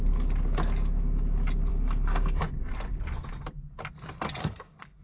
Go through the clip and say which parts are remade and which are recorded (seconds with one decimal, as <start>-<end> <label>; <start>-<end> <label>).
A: 0.0-1.7 recorded; 1.7-2.4 remade; 2.4-4.4 recorded; 4.4-5.0 remade